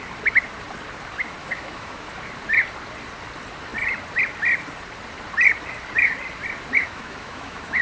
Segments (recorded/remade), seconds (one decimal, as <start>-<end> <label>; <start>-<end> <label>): 0.0-1.4 recorded; 1.4-2.1 remade; 2.1-6.8 recorded; 6.8-7.8 remade